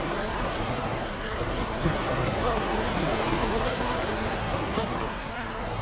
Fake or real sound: fake